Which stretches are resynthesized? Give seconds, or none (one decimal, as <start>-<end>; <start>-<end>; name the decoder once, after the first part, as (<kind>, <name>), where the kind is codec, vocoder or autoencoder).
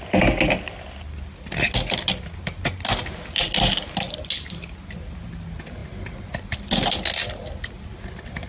none